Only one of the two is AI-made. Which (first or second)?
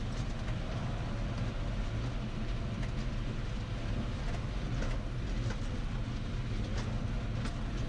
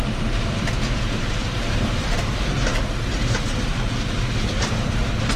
second